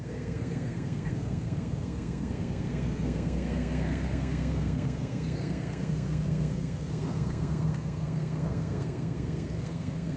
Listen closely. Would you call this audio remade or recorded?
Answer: remade